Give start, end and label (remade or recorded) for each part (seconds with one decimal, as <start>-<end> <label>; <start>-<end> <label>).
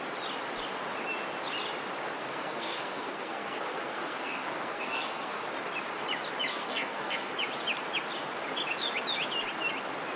0.0-2.2 recorded; 2.2-5.4 remade; 5.4-6.5 recorded; 6.5-7.3 remade; 7.3-10.2 recorded